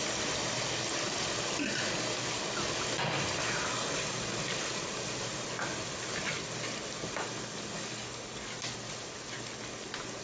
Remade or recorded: recorded